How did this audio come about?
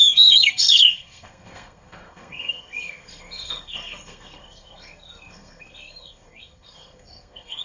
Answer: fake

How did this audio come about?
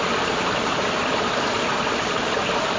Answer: real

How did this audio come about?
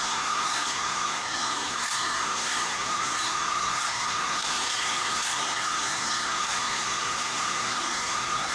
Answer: fake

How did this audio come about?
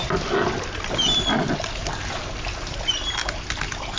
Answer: real